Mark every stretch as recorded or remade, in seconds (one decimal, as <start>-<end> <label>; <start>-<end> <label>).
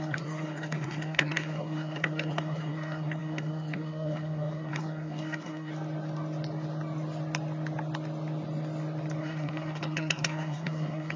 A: 0.0-5.7 remade; 5.7-9.2 recorded; 9.2-11.2 remade